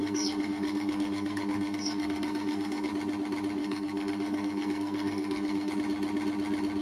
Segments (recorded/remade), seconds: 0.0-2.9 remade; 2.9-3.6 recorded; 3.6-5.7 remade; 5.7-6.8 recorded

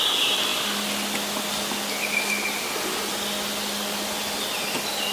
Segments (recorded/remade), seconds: 0.0-5.1 recorded

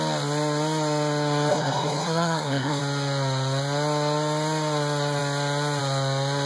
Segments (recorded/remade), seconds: 0.0-1.5 recorded; 1.5-2.8 remade; 2.8-6.5 recorded

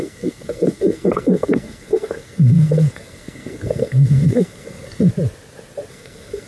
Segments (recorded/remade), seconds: 0.0-5.1 remade; 5.1-5.9 recorded; 5.9-6.5 remade

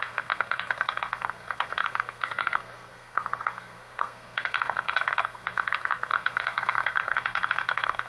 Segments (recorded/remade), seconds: 0.0-8.1 remade

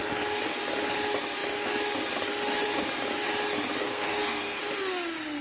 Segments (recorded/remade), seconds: 0.0-3.8 recorded; 3.8-4.6 remade; 4.6-5.4 recorded